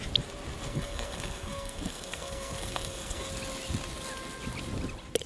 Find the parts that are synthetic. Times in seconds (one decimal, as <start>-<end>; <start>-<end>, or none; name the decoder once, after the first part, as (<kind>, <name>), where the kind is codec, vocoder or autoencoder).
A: 0.6-3.3 (codec, SNAC)